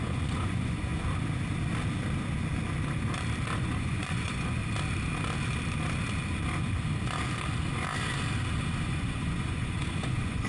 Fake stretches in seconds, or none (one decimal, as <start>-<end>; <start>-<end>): 0.0-0.9; 3.6-4.6; 8.8-10.5